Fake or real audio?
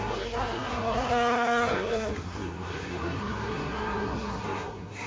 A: fake